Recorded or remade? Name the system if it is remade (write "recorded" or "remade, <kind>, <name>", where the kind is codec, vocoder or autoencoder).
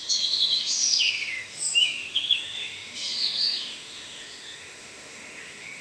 remade, autoencoder, DAC-VAE